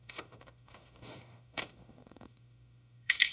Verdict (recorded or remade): remade